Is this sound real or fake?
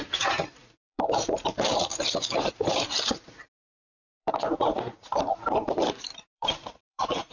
fake